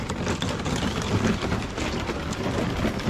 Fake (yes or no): no